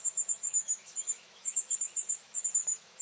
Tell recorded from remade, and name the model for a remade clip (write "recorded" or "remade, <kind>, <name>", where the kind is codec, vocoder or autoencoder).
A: remade, autoencoder, DAC-VAE